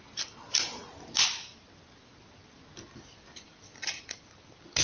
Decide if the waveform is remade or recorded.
recorded